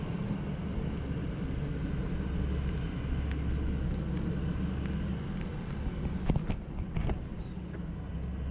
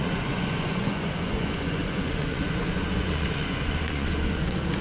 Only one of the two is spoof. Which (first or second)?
second